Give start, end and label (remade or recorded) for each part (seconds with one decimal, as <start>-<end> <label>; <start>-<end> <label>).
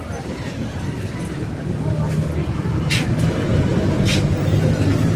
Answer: 0.0-2.4 recorded; 2.4-3.0 remade; 3.0-3.5 recorded; 3.5-5.2 remade